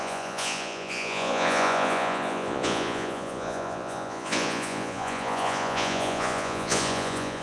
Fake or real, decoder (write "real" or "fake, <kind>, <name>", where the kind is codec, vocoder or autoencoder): fake, vocoder, Vocos